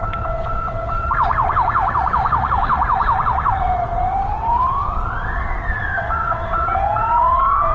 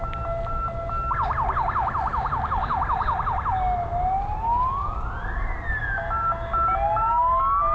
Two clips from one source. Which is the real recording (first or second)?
second